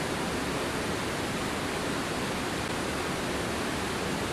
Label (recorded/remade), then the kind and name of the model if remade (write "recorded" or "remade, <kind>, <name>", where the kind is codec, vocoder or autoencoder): recorded